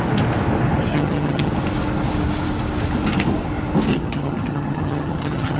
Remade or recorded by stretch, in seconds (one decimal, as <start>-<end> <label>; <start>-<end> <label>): 0.0-0.9 recorded; 0.9-1.5 remade; 1.5-3.9 recorded; 3.9-5.6 remade